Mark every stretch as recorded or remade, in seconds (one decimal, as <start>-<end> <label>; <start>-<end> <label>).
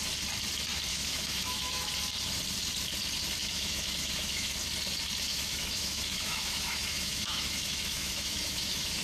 0.0-0.9 recorded; 0.9-1.9 remade; 1.9-3.4 recorded; 3.4-4.5 remade; 4.5-5.3 recorded; 5.3-9.0 remade